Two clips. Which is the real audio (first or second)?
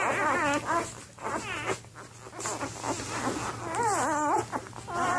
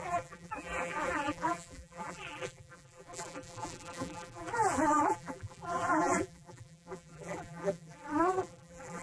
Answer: first